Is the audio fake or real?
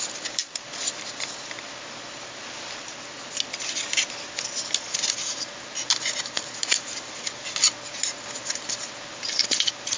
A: real